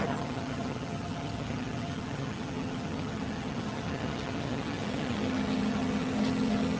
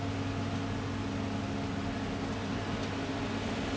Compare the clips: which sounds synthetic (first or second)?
first